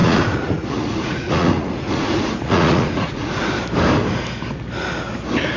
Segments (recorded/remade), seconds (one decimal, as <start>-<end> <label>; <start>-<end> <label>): 0.0-3.4 remade; 3.4-5.6 recorded